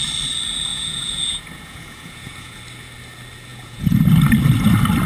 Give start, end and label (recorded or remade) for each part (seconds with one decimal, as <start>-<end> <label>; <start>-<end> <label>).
0.0-0.7 recorded; 0.7-2.6 remade; 2.6-3.5 recorded; 3.5-4.0 remade; 4.0-5.1 recorded